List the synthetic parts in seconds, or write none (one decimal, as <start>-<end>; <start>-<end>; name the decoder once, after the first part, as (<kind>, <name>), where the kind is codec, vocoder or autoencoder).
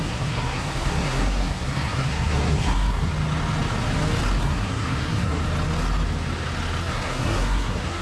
0.0-3.1 (codec, SNAC); 4.4-5.4; 6.8-8.0